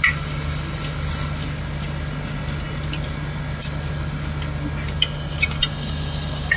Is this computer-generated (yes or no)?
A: no